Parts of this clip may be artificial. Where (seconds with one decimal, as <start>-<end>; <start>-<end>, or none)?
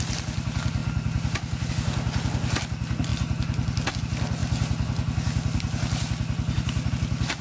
none